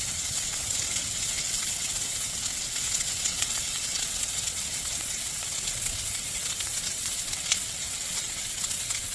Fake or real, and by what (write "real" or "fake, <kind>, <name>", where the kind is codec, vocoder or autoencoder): fake, vocoder, WaveNeXt